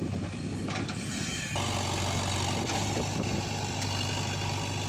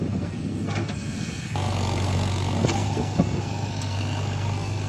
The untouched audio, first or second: first